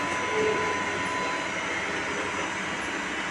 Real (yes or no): yes